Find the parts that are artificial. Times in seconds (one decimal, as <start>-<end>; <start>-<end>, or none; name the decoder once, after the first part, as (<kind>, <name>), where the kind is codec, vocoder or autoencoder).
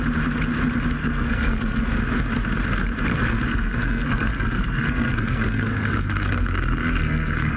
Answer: 1.0-2.0 (codec, SNAC); 3.1-7.6